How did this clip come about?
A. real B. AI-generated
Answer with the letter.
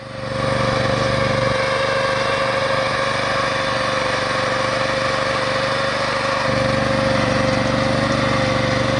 A